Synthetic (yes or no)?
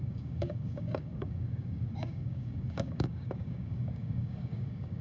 yes